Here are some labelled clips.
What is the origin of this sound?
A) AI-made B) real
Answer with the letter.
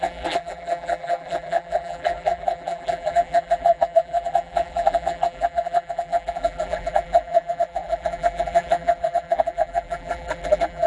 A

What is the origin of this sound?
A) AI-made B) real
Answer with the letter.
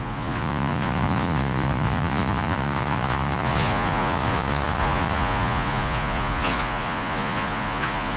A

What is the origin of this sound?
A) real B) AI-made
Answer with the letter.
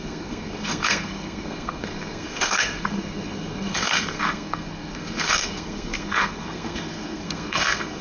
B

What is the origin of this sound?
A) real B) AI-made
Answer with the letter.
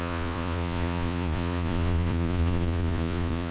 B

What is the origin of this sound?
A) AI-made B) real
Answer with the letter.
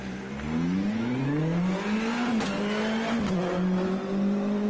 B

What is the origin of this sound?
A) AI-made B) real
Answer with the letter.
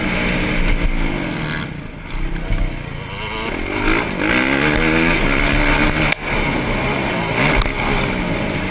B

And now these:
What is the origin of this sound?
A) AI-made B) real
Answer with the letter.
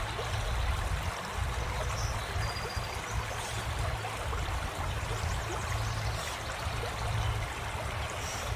B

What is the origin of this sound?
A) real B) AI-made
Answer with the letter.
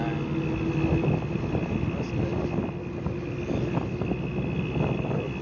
A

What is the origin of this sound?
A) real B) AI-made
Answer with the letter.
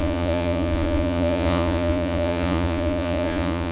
B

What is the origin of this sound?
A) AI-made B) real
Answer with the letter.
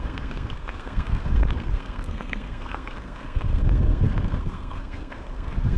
A